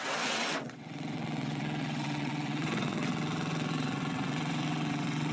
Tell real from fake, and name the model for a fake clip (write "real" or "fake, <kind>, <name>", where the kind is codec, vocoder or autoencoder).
fake, vocoder, WaveNeXt